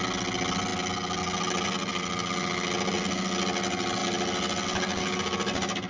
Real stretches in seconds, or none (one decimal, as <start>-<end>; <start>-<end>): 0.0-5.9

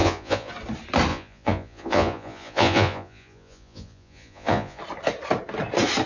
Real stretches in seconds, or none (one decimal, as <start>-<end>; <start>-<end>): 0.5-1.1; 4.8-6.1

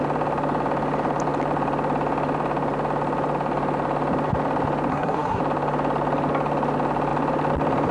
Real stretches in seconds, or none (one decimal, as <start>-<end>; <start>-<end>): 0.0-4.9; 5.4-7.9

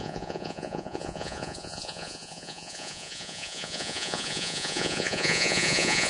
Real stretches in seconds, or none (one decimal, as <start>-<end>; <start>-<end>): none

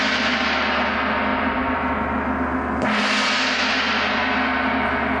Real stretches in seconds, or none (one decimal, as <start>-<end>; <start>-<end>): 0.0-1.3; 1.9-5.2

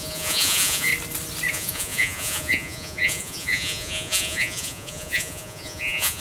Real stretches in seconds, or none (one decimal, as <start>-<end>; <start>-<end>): 0.9-1.5